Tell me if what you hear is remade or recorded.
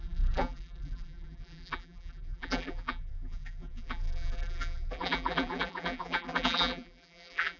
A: remade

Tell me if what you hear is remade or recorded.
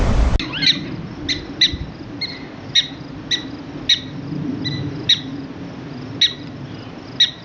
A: recorded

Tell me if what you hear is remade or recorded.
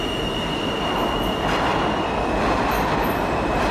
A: remade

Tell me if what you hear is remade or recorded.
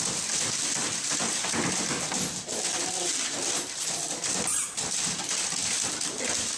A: recorded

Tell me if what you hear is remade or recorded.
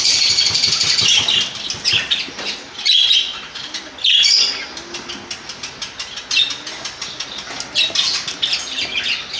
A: recorded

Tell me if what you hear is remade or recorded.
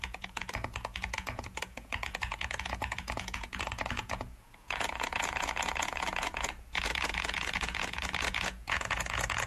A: remade